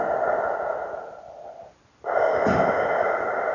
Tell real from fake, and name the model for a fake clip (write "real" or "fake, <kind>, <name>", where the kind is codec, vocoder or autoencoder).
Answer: real